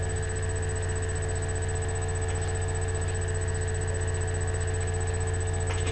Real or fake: real